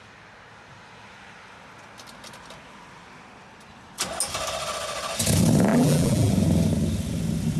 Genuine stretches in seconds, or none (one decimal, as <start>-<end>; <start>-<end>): 0.0-5.7; 6.3-7.6